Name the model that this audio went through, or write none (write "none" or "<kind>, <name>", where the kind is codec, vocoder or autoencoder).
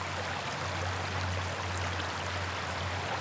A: none